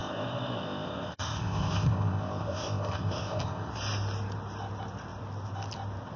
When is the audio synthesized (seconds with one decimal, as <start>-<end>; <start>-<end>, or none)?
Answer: 0.0-3.7